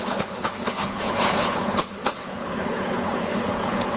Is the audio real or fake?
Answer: fake